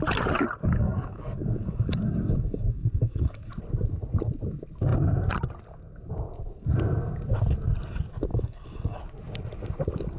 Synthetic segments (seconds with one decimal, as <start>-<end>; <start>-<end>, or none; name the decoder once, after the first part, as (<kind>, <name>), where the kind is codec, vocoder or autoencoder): 0.6-3.5 (codec, DAC); 8.3-9.0

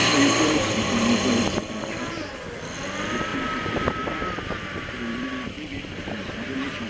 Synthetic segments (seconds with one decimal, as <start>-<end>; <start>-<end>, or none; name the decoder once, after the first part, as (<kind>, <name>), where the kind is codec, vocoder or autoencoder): 0.0-1.6 (vocoder, BigVGAN v2); 3.3-6.3

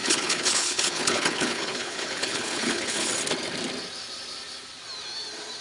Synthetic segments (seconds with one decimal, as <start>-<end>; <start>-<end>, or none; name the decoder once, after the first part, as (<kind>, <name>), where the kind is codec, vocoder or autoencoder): 0.0-3.1 (codec, HILCodec)

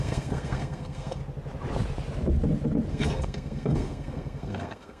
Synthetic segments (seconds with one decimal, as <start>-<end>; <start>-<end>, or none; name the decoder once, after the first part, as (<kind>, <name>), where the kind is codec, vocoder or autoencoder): 0.0-1.2 (codec, SNAC); 2.9-5.0